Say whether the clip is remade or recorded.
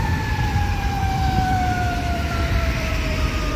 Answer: remade